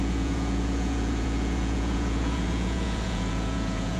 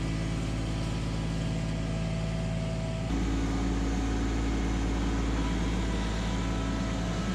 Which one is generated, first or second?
first